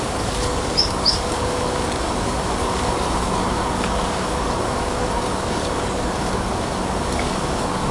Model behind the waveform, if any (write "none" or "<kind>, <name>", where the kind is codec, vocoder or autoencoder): codec, DAC